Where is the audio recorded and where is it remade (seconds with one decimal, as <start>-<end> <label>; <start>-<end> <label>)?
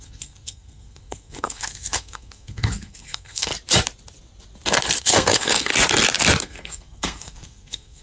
0.0-3.5 remade; 3.5-5.0 recorded; 5.0-5.7 remade; 5.7-6.4 recorded; 6.4-8.0 remade